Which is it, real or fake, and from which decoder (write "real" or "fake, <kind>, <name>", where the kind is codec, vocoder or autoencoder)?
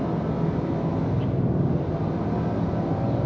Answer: real